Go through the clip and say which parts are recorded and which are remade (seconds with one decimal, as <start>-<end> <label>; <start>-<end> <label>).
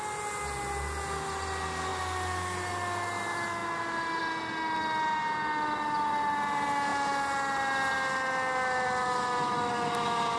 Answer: 0.0-10.4 recorded